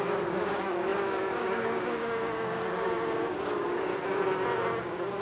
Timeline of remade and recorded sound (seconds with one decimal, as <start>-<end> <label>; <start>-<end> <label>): 0.0-3.9 remade; 3.9-4.8 recorded; 4.8-5.2 remade